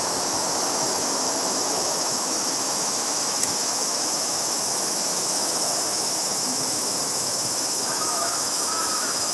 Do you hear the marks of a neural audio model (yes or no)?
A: yes